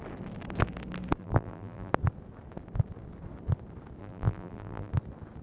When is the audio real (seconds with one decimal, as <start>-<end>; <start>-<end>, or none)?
0.0-1.2; 1.9-4.0; 4.9-5.4